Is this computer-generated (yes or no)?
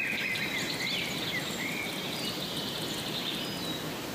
no